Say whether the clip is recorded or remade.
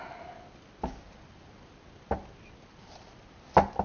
recorded